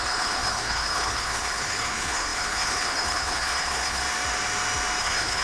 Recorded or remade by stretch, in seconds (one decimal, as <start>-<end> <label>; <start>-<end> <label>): 0.0-4.0 remade; 4.0-5.0 recorded; 5.0-5.4 remade